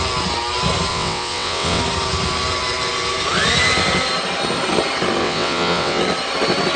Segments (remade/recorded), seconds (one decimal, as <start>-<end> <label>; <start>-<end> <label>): 0.0-0.9 recorded; 0.9-1.8 remade; 1.8-5.2 recorded; 5.2-6.0 remade; 6.0-6.8 recorded

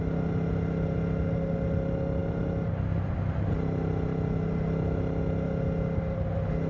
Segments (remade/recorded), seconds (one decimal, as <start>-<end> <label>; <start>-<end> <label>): 0.0-6.7 recorded

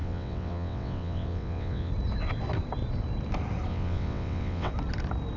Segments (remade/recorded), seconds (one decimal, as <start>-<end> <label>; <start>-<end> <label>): 0.0-1.9 remade; 1.9-3.7 recorded; 3.7-4.7 remade; 4.7-5.4 recorded

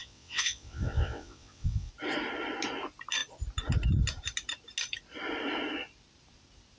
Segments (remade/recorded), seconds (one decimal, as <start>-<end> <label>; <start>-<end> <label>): 0.0-1.9 remade; 1.9-6.8 recorded

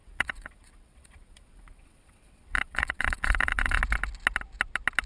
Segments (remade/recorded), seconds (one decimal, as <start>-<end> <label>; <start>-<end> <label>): 0.0-3.8 remade; 3.8-5.1 recorded

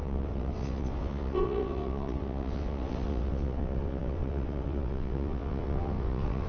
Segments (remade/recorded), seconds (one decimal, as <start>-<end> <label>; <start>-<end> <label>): 0.0-6.5 remade

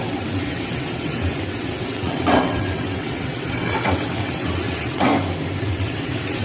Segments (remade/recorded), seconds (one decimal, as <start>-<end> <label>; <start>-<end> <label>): 0.0-5.1 remade; 5.1-5.6 recorded; 5.6-6.4 remade